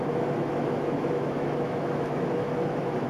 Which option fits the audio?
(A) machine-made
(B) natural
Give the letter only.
A